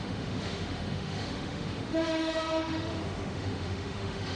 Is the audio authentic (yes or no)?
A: no